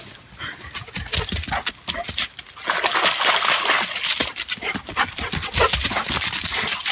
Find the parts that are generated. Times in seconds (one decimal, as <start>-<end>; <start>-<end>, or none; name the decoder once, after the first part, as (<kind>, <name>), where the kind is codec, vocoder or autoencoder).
4.2-5.2 (vocoder, BigVGAN v2)